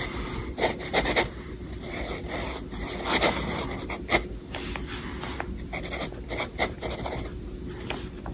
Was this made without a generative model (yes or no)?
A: yes